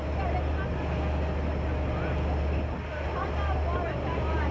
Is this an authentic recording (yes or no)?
yes